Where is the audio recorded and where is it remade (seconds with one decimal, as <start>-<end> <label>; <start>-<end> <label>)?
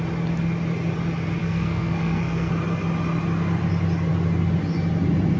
0.0-1.4 recorded; 1.4-2.5 remade; 2.5-5.4 recorded